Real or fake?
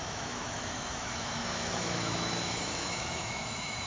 fake